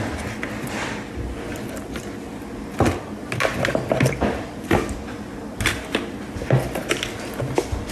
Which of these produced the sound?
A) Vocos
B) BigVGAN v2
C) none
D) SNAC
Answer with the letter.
C